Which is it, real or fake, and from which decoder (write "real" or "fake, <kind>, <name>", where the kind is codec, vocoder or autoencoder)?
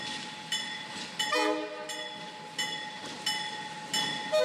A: real